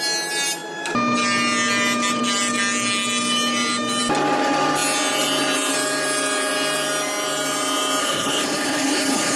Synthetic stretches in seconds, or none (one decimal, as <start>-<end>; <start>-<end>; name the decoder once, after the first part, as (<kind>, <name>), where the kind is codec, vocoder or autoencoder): 8.0-9.4 (codec, HILCodec)